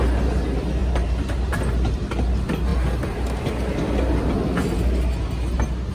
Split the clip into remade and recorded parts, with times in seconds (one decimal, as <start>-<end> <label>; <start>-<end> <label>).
0.0-0.8 recorded; 0.8-1.5 remade; 1.5-5.9 recorded